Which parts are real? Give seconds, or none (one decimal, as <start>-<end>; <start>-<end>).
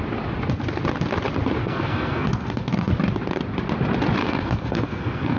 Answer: 0.0-1.6; 2.9-4.2